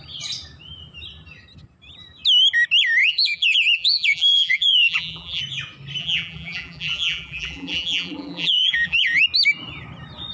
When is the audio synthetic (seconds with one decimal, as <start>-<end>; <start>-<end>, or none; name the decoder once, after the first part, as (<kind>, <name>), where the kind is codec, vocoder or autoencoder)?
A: 3.0-5.4 (vocoder, BigVGAN v2); 6.0-9.2